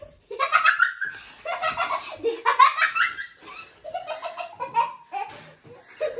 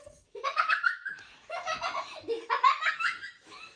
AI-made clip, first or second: second